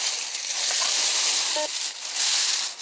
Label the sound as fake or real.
real